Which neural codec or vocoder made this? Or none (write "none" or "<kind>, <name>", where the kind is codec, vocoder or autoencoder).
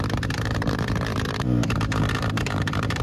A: vocoder, BigVGAN v2